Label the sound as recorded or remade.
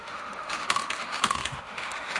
remade